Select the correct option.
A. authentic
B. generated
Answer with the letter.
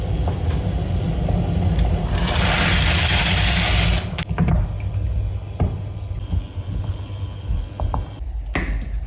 A